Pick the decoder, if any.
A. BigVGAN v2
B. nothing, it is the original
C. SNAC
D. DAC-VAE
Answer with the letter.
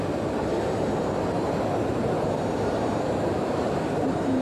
A